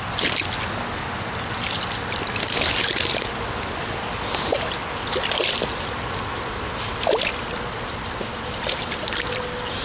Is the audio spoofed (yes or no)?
no